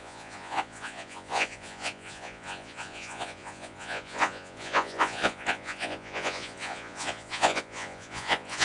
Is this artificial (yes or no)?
yes